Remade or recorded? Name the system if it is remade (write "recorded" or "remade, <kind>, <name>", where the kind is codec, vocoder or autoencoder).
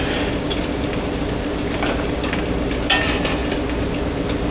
recorded